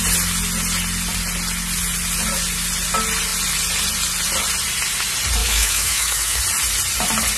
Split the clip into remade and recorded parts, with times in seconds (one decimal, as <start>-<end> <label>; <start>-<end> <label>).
0.0-5.4 recorded; 5.4-6.4 remade; 6.4-7.4 recorded